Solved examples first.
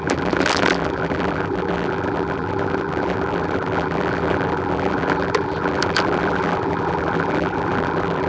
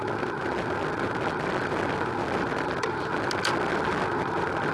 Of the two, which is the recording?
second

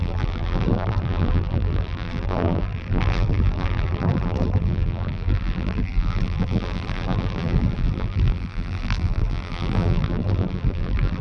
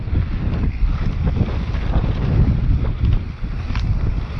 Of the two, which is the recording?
second